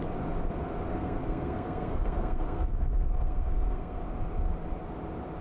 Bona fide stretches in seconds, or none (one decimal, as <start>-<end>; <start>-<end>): 0.0-0.9; 4.0-5.4